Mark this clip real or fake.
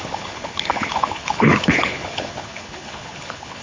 fake